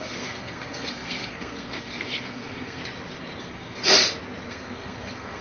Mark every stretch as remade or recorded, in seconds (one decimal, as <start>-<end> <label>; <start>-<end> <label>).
0.0-2.8 remade; 2.8-3.4 recorded; 3.4-3.8 remade; 3.8-4.5 recorded; 4.5-5.4 remade